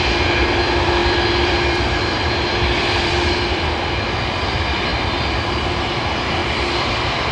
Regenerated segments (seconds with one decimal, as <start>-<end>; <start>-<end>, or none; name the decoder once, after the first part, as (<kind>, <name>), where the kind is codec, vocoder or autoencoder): 1.0-4.1 (vocoder, BigVGAN v2); 4.9-5.8; 6.4-7.3